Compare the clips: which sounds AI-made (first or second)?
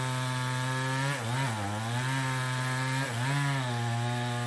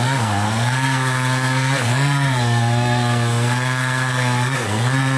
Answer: second